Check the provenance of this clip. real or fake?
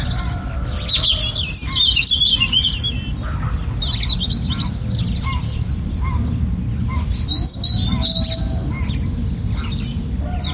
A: real